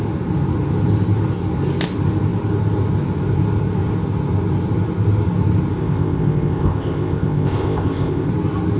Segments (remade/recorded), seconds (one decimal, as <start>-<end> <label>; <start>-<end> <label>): 0.0-5.8 recorded; 5.8-8.3 remade; 8.3-8.8 recorded